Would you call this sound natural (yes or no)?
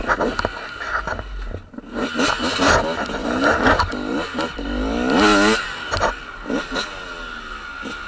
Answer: yes